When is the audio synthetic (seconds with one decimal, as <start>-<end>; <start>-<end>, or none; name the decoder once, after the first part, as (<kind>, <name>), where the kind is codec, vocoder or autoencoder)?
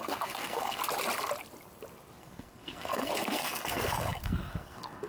0.0-0.8 (codec, SNAC); 2.2-5.1